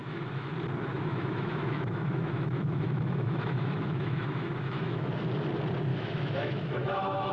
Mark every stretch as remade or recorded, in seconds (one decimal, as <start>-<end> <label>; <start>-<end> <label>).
0.0-0.5 remade; 0.5-0.9 recorded; 0.9-5.1 remade; 5.1-5.9 recorded; 5.9-7.3 remade